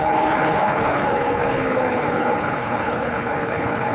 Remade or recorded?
remade